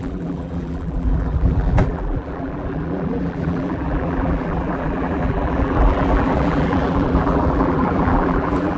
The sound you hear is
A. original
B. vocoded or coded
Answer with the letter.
B